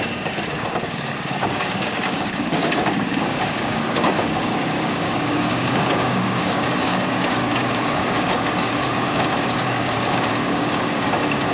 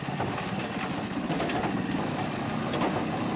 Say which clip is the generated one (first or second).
first